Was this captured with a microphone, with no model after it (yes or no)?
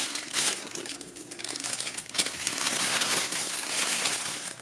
no